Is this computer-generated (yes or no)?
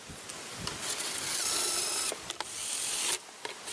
no